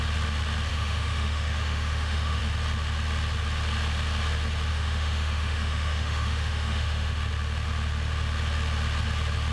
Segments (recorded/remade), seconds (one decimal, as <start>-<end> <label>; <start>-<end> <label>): 0.0-0.7 recorded; 0.7-2.4 remade; 2.4-4.7 recorded; 4.7-7.2 remade; 7.2-9.5 recorded